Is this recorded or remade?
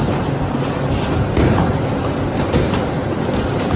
recorded